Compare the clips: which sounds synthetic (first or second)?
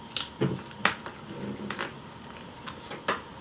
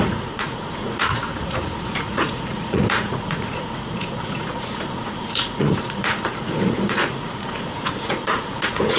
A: second